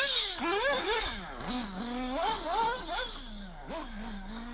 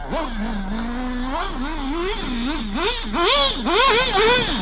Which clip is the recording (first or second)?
second